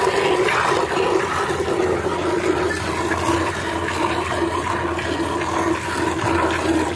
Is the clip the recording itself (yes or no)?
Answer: yes